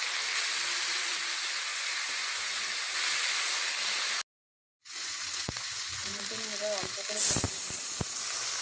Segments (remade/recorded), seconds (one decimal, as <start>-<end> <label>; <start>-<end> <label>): 0.0-1.7 recorded; 1.7-2.6 remade; 2.6-4.4 recorded; 4.4-6.2 remade; 6.2-8.6 recorded